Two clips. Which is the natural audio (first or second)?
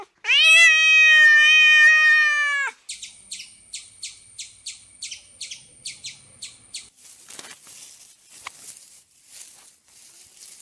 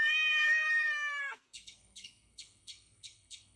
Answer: first